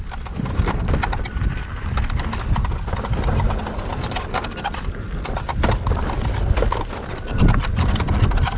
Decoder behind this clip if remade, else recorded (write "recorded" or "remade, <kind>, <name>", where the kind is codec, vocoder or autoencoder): recorded